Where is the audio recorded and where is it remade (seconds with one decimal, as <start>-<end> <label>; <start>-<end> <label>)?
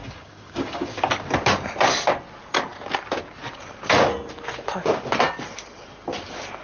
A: 0.0-1.1 remade; 1.1-6.6 recorded